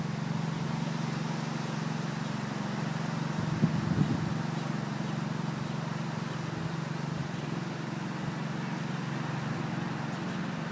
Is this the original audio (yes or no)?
yes